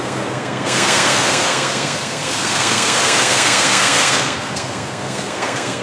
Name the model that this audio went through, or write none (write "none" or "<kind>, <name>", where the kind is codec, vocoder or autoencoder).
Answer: codec, SNAC